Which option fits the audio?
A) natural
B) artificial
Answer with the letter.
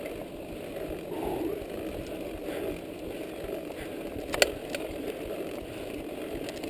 A